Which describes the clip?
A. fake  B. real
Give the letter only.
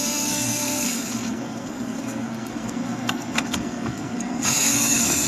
A